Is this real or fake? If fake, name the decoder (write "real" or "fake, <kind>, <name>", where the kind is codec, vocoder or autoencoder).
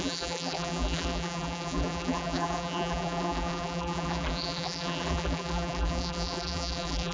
fake, vocoder, BigVGAN v2